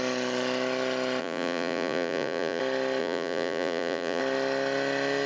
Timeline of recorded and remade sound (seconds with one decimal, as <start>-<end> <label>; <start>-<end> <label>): 0.0-1.2 recorded; 1.2-2.6 remade; 2.6-3.0 recorded; 3.0-4.2 remade; 4.2-5.3 recorded